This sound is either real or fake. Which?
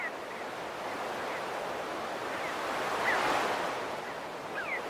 real